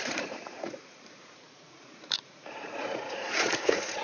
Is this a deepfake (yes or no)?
yes